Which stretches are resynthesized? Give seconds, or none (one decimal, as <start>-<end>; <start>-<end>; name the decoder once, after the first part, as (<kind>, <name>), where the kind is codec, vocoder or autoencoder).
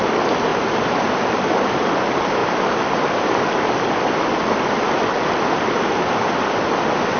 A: none